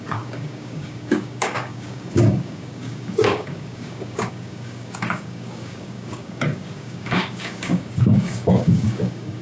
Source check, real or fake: fake